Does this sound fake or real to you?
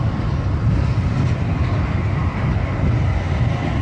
real